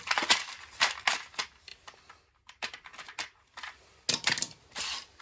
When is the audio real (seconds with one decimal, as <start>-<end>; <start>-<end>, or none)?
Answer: 0.0-1.7; 3.8-5.2